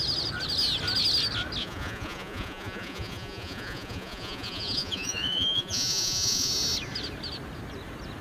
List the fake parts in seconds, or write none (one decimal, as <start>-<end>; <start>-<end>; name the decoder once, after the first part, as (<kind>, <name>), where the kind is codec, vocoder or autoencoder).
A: 1.6-6.5 (vocoder, Vocos)